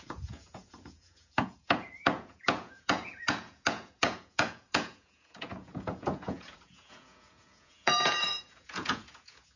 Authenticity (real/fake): fake